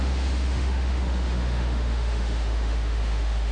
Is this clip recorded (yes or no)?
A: no